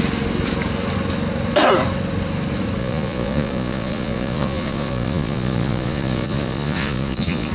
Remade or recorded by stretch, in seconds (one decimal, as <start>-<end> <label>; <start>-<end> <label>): 0.0-2.8 recorded; 2.8-7.5 remade